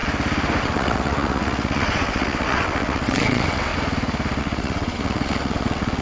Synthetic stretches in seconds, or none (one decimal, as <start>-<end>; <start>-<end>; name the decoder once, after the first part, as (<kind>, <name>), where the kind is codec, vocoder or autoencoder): 0.6-3.7 (vocoder, WaveNeXt); 4.4-6.0